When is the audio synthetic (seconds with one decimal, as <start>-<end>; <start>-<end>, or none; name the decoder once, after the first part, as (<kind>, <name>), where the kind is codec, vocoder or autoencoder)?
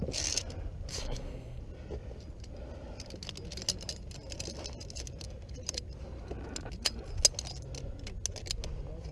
0.9-1.6 (codec, SNAC)